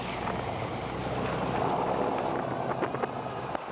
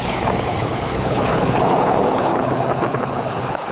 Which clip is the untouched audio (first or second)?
first